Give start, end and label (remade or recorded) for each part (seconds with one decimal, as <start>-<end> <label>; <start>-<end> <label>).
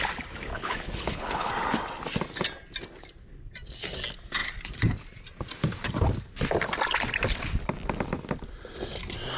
0.0-0.5 recorded; 0.5-1.5 remade; 1.5-9.4 recorded